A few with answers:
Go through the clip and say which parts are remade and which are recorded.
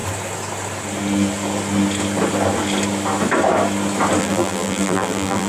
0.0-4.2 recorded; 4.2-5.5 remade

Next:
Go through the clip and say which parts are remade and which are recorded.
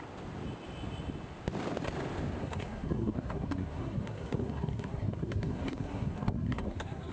0.0-2.4 recorded; 2.4-7.1 remade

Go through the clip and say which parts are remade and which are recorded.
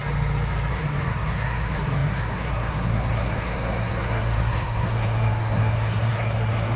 0.0-0.7 recorded; 0.7-6.8 remade